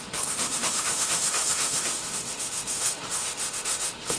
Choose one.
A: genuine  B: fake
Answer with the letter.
B